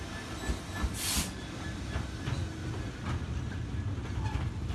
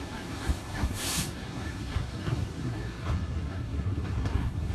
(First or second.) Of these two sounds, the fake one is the second